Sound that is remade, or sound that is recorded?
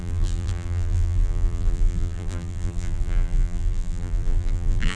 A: remade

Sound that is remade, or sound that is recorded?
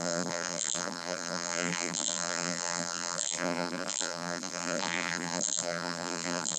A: remade